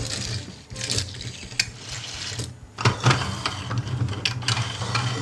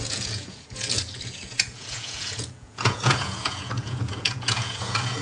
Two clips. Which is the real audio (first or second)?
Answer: first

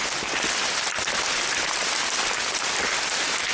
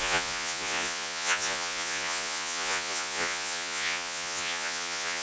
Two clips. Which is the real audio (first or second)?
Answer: first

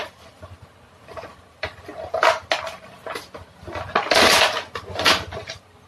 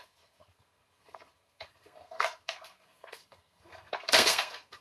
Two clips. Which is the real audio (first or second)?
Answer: first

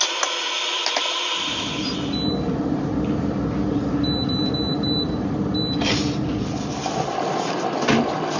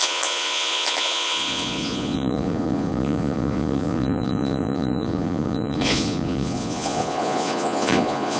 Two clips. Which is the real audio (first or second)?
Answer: first